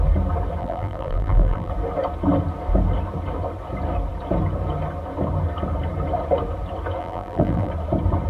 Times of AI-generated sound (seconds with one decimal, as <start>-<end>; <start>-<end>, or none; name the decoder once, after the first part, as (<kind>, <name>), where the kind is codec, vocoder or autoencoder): 0.6-1.7 (vocoder, BigVGAN v2); 7.0-7.7